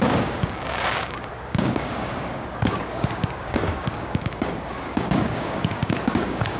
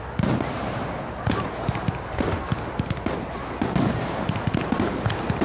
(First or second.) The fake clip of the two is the first